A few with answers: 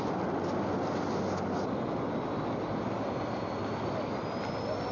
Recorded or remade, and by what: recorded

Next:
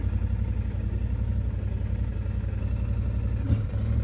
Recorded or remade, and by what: recorded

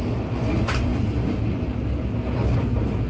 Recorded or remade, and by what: recorded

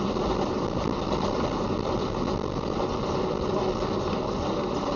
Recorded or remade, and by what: recorded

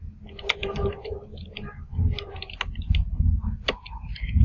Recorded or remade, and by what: recorded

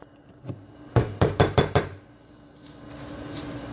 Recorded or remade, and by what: remade, vocoder, BigVGAN v2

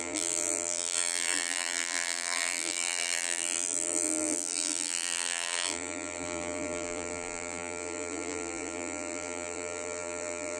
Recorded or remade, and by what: remade, vocoder, BigVGAN v2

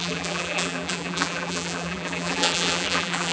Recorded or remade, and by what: remade, vocoder, BigVGAN v2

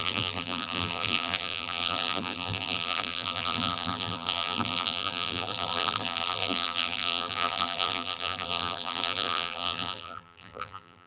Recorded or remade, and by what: remade, vocoder, BigVGAN v2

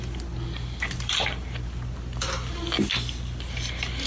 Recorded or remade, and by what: recorded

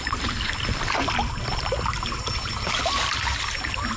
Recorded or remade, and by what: remade, vocoder, BigVGAN v2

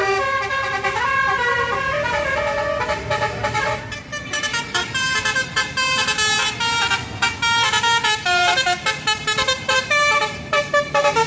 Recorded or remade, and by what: remade, vocoder, BigVGAN v2